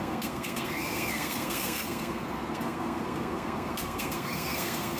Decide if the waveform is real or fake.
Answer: fake